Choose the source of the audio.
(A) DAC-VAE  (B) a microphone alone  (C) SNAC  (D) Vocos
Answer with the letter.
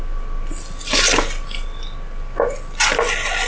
B